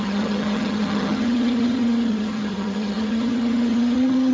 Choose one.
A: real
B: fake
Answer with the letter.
B